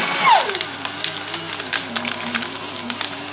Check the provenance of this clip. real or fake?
real